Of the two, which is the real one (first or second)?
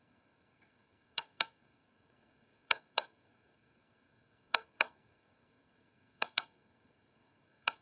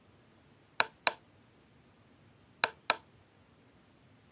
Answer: second